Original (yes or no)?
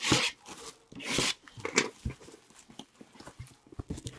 yes